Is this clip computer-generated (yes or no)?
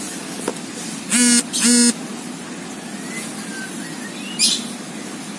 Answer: no